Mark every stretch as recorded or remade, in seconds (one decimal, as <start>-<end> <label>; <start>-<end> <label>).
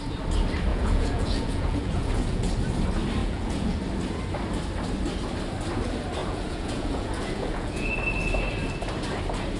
0.0-0.7 recorded; 0.7-2.5 remade; 2.5-3.2 recorded; 3.2-3.8 remade; 3.8-6.2 recorded; 6.2-7.9 remade; 7.9-9.6 recorded